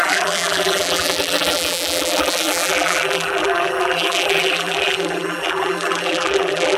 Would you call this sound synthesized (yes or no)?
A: yes